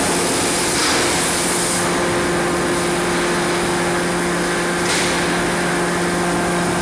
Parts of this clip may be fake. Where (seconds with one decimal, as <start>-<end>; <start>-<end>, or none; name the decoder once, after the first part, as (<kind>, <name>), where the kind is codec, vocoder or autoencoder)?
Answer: none